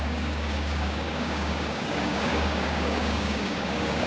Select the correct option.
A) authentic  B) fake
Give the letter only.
B